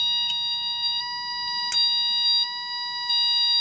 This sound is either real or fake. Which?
real